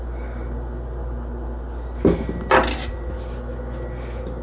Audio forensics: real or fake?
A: real